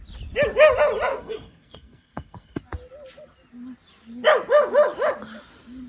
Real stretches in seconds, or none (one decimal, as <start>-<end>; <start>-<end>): 0.0-1.1; 2.6-5.9